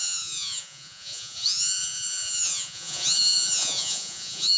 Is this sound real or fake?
fake